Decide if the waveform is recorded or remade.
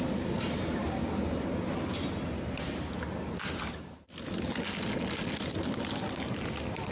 recorded